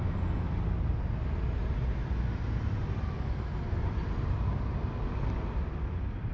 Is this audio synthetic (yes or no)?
no